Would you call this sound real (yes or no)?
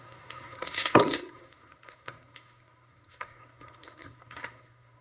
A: no